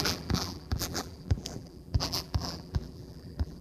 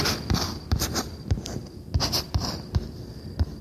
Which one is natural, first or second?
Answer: second